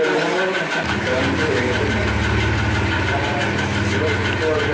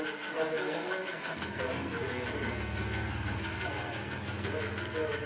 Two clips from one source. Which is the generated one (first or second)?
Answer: second